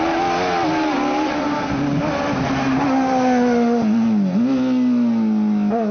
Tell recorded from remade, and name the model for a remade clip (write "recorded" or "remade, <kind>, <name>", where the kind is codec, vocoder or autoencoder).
recorded